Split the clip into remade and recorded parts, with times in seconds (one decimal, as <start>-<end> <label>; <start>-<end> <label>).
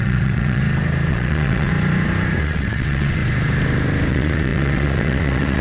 0.0-0.6 remade; 0.6-1.1 recorded; 1.1-1.7 remade; 1.7-2.4 recorded; 2.4-3.2 remade; 3.2-4.1 recorded; 4.1-5.6 remade